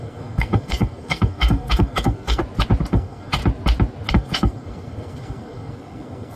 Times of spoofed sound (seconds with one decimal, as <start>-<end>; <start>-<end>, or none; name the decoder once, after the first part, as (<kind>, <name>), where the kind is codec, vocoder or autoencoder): 0.0-2.4 (codec, SNAC); 2.9-3.4; 4.1-6.4